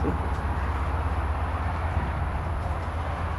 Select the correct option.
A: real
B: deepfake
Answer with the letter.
A